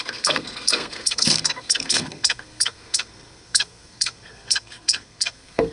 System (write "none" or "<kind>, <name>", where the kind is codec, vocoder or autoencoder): codec, SNAC